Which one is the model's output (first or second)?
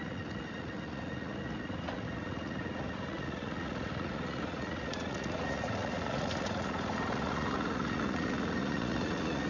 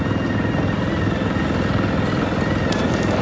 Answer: first